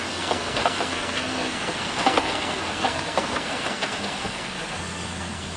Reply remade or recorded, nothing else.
remade